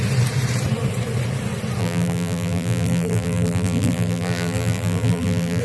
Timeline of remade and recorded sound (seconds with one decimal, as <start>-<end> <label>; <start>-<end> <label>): 0.0-1.8 recorded; 1.8-5.6 remade